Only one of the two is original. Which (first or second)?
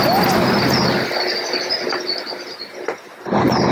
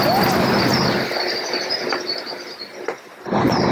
first